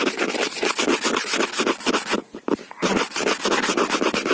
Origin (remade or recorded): recorded